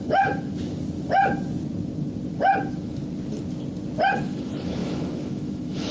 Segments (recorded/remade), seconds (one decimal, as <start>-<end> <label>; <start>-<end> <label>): 0.0-0.5 remade; 0.5-2.6 recorded; 2.6-3.0 remade; 3.0-4.1 recorded; 4.1-5.9 remade